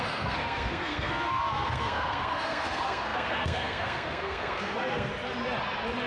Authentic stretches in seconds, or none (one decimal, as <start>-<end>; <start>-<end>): 5.1-6.1